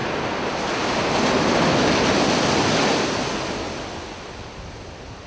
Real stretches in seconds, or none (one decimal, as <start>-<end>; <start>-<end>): 0.0-5.3